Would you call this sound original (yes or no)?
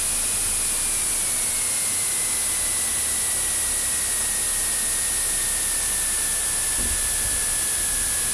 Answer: yes